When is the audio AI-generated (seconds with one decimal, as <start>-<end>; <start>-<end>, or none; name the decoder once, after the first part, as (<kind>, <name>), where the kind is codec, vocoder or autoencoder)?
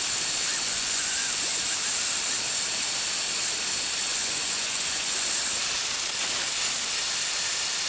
0.5-1.5 (vocoder, Vocos); 4.1-5.3